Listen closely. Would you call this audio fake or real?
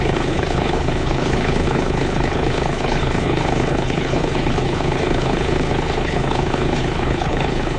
fake